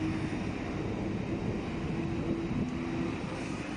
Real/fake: real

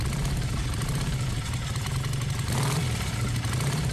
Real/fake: fake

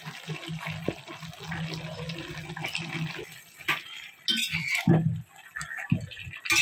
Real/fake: real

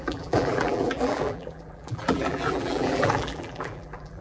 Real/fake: fake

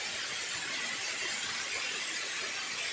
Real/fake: real